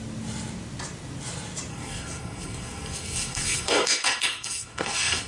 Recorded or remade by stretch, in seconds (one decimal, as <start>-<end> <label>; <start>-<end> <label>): 0.0-1.7 recorded; 1.7-5.3 remade